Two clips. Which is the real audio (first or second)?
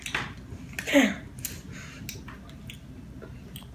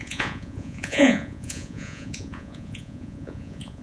first